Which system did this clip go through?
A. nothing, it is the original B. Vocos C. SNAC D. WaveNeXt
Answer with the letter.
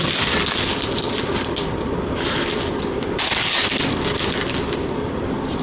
A